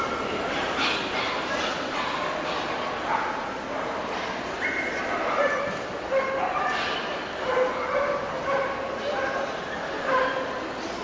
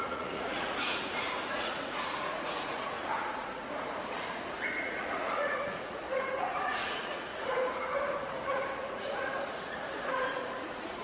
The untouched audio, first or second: first